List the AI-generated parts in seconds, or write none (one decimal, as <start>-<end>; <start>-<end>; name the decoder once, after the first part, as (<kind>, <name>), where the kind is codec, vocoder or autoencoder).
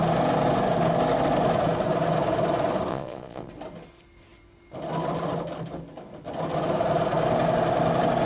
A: 2.9-3.5 (vocoder, Vocos)